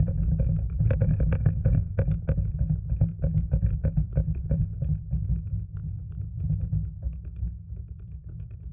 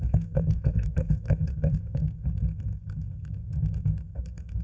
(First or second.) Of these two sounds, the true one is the first